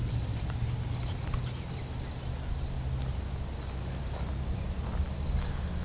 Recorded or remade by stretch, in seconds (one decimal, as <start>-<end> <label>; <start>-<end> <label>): 0.0-0.7 remade; 0.7-5.8 recorded